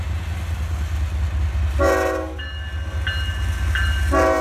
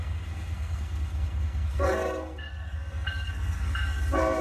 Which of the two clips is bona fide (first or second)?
first